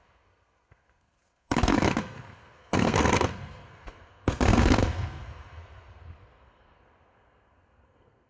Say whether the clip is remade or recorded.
remade